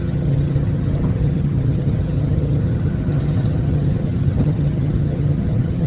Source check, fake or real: fake